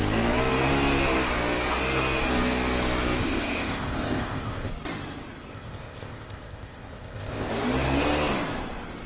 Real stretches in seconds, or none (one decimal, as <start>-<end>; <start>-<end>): 0.0-3.2; 4.7-5.5; 7.5-9.1